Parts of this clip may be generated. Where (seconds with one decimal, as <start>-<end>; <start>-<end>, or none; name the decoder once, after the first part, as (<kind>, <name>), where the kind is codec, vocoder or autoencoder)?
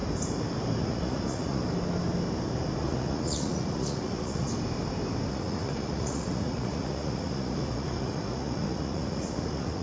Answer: 0.8-1.6 (vocoder, Vocos); 2.8-4.5; 5.3-9.8